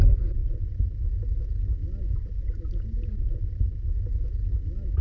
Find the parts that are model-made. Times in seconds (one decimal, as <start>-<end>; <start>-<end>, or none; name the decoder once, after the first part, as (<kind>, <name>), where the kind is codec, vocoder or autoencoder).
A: none